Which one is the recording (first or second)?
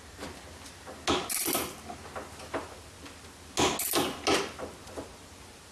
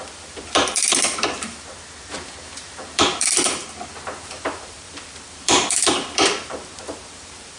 first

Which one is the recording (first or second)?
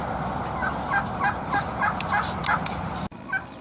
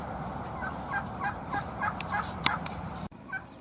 first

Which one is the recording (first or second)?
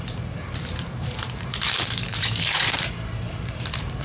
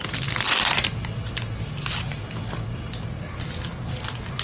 second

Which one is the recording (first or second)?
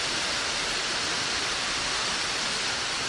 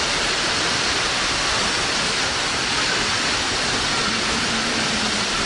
second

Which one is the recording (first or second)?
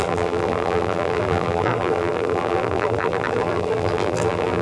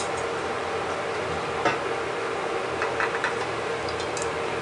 second